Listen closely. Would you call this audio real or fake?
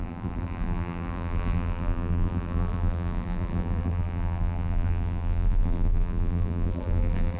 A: fake